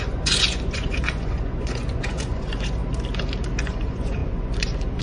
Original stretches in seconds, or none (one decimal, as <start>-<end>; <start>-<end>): 2.8-3.6

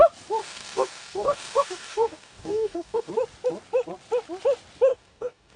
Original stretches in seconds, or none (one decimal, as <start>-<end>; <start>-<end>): 0.0-0.4; 3.1-4.9

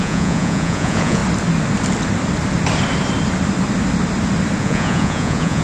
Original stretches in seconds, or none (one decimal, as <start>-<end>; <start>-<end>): 1.2-4.6

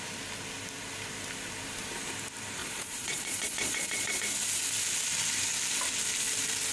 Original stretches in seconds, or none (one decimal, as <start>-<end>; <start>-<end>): 0.0-2.6; 4.2-6.7

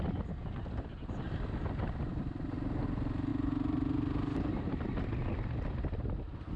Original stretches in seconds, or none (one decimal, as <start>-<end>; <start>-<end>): 0.0-6.6

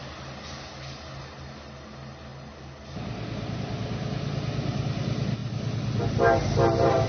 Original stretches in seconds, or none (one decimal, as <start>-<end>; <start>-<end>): 0.0-7.1

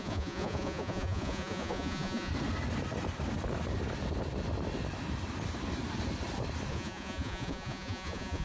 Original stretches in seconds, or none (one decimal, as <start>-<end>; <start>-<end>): 2.3-6.7